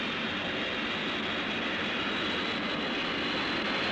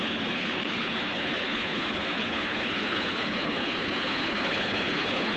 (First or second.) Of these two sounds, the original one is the first